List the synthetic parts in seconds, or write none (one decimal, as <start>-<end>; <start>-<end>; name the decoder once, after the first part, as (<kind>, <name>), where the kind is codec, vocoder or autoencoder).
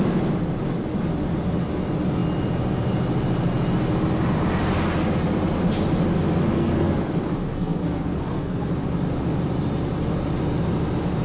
6.5-7.1 (codec, SNAC); 7.5-8.7